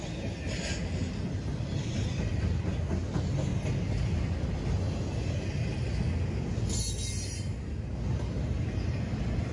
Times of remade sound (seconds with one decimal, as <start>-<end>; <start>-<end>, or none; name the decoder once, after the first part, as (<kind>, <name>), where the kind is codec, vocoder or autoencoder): none